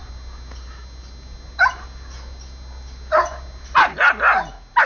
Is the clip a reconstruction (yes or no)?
no